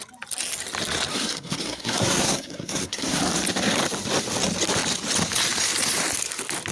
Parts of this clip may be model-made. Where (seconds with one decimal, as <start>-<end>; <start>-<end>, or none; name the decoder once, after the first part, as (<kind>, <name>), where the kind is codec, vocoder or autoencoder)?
1.1-3.2 (codec, SNAC)